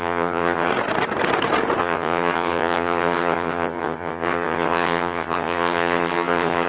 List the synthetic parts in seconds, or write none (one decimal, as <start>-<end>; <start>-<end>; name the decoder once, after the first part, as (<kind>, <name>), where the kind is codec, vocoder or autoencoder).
0.0-0.7 (vocoder, HiFi-GAN); 1.8-6.7